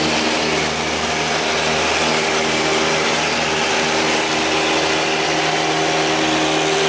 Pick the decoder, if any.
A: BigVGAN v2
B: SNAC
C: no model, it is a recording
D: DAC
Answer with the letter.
C